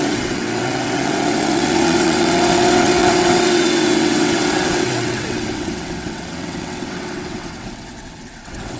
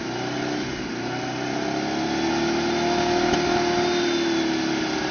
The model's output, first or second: first